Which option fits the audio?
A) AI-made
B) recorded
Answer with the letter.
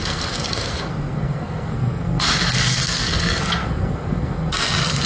A